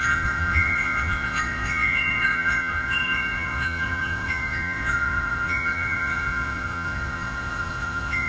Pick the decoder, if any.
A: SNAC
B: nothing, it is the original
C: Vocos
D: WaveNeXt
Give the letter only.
C